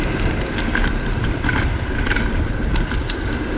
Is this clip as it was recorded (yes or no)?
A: no